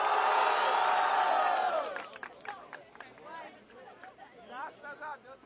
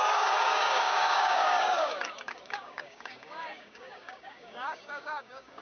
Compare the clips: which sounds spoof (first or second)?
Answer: second